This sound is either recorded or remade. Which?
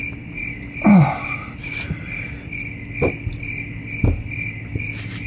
recorded